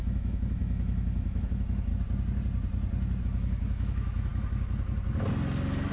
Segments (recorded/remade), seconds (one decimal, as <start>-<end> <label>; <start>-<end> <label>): 0.0-1.9 remade; 1.9-3.2 recorded; 3.2-4.3 remade; 4.3-5.9 recorded

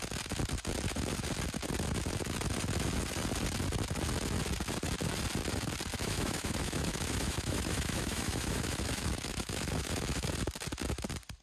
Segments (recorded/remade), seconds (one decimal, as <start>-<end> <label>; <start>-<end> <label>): 0.0-5.9 recorded; 5.9-10.3 remade; 10.3-11.4 recorded

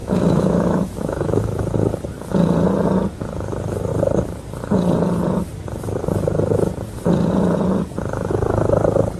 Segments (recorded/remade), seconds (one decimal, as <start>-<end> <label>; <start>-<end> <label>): 0.0-1.6 remade; 1.6-9.2 recorded

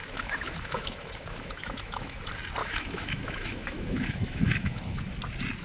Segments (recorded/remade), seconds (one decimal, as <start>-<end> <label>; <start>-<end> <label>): 0.0-2.2 remade; 2.2-2.6 recorded; 2.6-5.0 remade; 5.0-5.6 recorded